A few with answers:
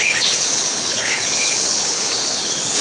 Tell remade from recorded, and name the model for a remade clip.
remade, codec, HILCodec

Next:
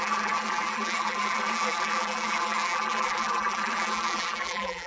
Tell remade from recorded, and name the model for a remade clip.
remade, vocoder, BigVGAN v2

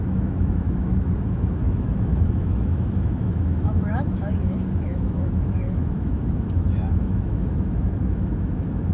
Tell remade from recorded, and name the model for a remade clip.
remade, autoencoder, DAC-VAE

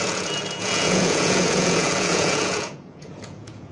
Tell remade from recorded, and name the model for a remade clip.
remade, vocoder, Vocos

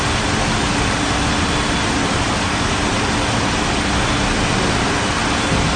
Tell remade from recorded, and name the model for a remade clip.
recorded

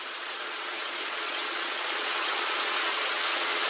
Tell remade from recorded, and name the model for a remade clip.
remade, vocoder, Vocos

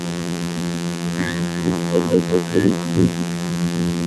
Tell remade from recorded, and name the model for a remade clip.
remade, vocoder, BigVGAN v2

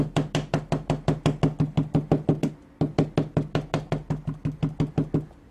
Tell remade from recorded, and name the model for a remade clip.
recorded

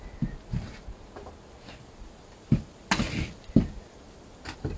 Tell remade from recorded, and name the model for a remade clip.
recorded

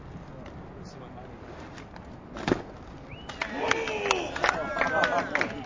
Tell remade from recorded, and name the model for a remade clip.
recorded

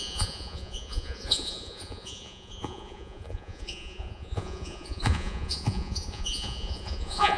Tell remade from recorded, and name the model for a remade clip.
remade, vocoder, Vocos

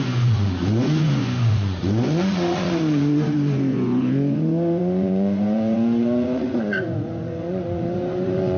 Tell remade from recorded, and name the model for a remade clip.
remade, vocoder, Vocos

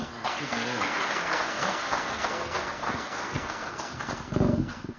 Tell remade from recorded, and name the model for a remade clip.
remade, codec, SNAC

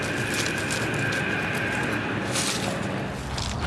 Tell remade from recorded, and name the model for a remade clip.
recorded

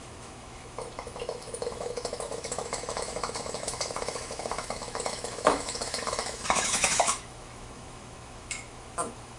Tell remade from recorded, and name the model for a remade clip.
remade, autoencoder, DAC-VAE